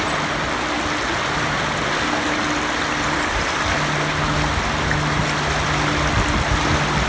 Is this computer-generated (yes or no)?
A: no